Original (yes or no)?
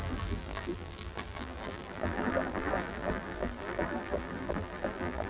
no